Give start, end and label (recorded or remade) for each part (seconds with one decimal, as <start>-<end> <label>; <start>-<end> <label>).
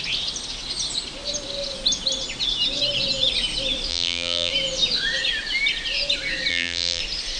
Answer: 0.0-3.9 recorded; 3.9-4.5 remade; 4.5-6.5 recorded; 6.5-7.0 remade; 7.0-7.4 recorded